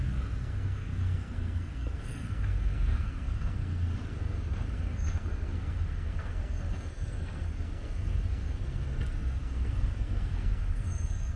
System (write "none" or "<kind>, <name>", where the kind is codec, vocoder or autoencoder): codec, SNAC